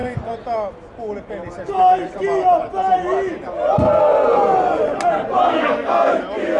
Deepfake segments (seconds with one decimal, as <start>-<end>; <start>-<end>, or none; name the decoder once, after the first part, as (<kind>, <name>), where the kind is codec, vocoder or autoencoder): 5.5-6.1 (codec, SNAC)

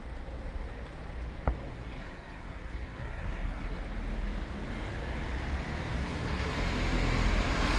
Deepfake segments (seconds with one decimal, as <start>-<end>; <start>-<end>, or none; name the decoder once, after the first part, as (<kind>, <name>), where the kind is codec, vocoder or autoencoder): 1.7-3.8 (codec, SNAC); 6.0-6.6

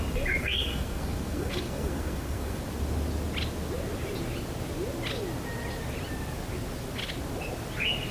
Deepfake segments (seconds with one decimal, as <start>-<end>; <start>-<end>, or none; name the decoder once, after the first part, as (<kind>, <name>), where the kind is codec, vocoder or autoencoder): 0.4-2.6 (codec, SNAC)